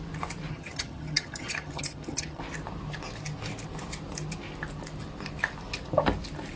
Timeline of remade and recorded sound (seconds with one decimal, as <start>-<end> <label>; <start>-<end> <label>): 0.0-0.5 recorded; 0.5-2.4 remade; 2.4-6.6 recorded